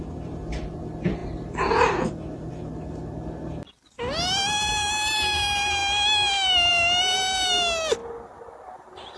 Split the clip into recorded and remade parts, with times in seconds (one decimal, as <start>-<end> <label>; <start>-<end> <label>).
0.0-9.2 recorded